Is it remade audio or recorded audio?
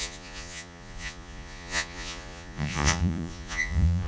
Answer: remade